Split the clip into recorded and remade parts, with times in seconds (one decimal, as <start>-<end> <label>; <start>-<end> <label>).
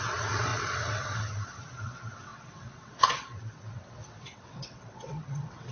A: 0.0-5.7 remade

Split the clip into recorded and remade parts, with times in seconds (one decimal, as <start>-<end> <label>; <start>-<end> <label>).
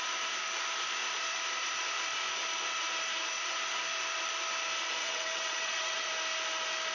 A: 0.0-5.0 recorded; 5.0-6.1 remade; 6.1-6.9 recorded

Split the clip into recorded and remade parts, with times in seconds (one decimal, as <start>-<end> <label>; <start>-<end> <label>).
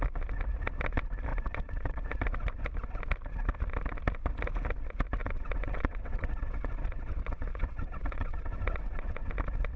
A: 0.0-1.3 recorded; 1.3-2.0 remade; 2.0-5.2 recorded; 5.2-9.3 remade; 9.3-9.8 recorded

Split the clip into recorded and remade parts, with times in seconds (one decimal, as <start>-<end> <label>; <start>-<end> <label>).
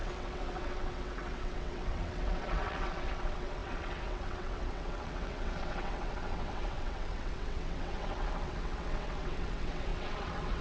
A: 0.0-10.6 remade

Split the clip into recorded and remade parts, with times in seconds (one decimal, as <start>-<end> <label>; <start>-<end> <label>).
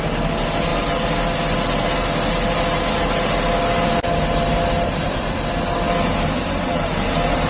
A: 0.0-7.5 recorded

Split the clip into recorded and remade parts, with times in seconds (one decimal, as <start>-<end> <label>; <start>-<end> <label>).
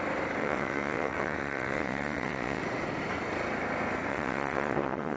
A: 0.0-0.4 recorded; 0.4-2.6 remade; 2.6-4.1 recorded; 4.1-5.2 remade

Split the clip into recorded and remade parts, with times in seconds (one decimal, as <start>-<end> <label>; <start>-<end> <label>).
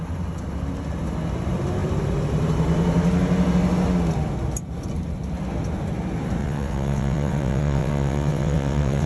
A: 0.0-6.4 recorded; 6.4-9.1 remade